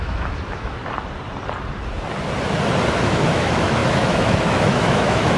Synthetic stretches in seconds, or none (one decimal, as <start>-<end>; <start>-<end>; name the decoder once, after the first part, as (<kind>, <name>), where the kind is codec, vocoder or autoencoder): 0.0-0.8 (autoencoder, DAC-VAE); 3.0-5.4